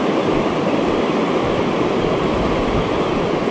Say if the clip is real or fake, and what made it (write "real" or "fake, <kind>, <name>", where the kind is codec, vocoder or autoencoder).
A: real